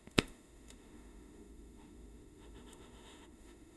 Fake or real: fake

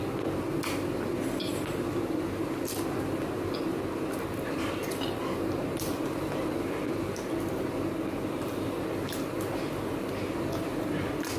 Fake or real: real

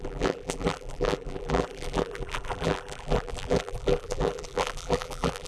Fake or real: fake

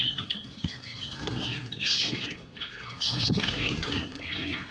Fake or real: fake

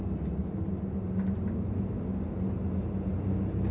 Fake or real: real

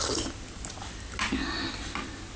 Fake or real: real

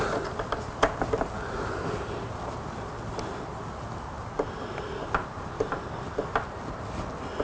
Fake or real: real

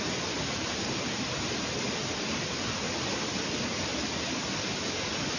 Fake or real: real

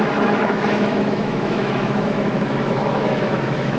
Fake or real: fake